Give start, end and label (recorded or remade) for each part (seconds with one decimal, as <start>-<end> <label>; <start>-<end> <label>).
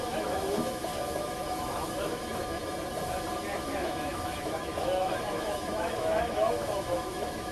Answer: 0.0-2.6 remade; 2.6-3.5 recorded; 3.5-7.5 remade